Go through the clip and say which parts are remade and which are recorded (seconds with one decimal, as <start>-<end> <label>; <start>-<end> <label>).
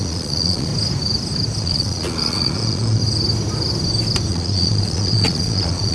0.0-0.7 remade; 0.7-1.6 recorded; 1.6-3.0 remade; 3.0-4.3 recorded; 4.3-5.9 remade